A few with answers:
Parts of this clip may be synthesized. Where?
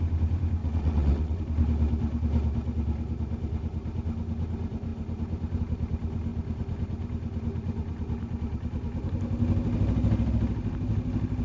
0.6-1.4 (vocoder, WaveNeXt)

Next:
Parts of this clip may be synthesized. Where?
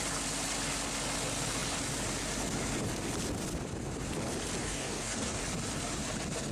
4.6-5.4 (codec, DAC)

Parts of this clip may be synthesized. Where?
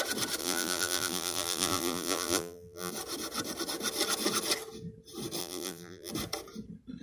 0.4-2.9 (vocoder, BigVGAN v2); 5.4-6.1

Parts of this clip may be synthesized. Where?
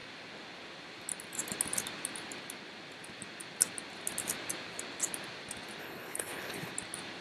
5.8-6.7 (codec, HILCodec)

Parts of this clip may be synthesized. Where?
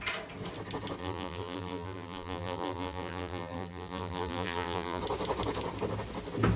1.0-5.0 (vocoder, BigVGAN v2)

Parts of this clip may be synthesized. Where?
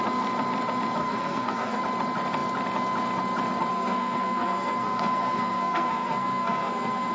1.0-1.8 (codec, SNAC); 3.7-7.1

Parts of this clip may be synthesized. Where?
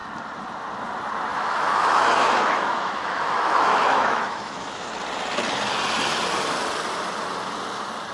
1.3-4.9 (autoencoder, DAC-VAE)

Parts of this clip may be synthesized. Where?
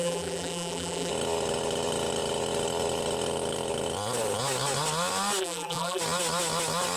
0.0-1.1 (vocoder, BigVGAN v2); 5.4-6.0